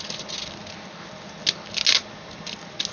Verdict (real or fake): real